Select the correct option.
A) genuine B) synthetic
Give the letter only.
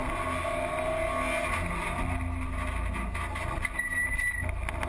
A